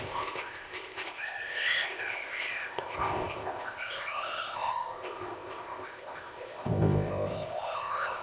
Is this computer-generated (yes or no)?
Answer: yes